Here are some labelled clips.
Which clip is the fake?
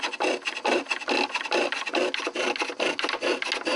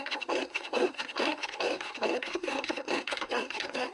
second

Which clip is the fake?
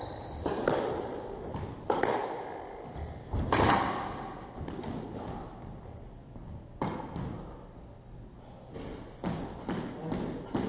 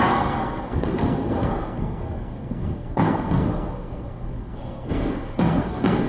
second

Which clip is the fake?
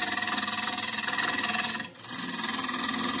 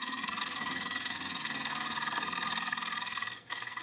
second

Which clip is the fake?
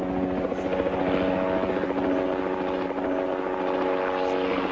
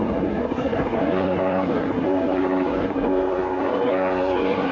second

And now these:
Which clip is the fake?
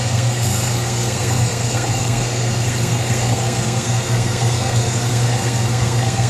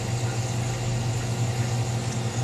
first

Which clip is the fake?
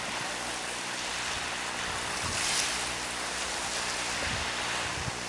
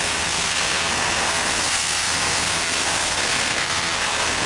second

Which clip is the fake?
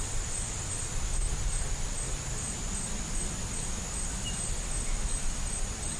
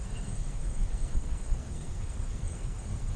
second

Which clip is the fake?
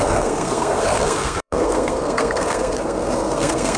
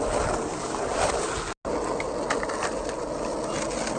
first